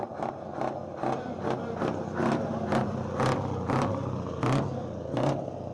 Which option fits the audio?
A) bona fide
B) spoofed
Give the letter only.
A